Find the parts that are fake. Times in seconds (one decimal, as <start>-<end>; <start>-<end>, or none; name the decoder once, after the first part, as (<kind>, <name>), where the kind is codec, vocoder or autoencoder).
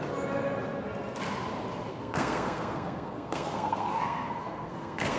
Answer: 1.9-5.2 (codec, SNAC)